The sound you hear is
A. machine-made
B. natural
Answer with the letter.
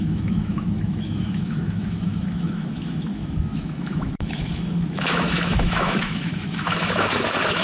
A